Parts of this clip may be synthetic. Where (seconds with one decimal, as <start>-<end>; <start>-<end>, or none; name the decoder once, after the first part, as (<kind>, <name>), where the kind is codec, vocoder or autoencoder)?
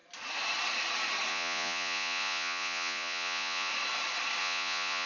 1.3-3.7 (vocoder, Vocos); 4.4-5.1